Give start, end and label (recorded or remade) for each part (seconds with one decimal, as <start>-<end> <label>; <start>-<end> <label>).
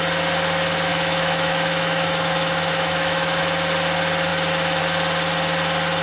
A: 0.0-0.9 recorded; 0.9-3.4 remade; 3.4-6.0 recorded